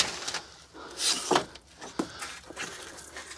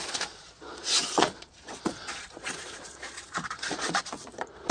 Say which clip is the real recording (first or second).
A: first